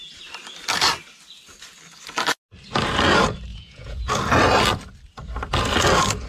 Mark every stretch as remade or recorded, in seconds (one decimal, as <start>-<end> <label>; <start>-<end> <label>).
0.0-3.5 recorded; 3.5-4.1 remade; 4.1-6.3 recorded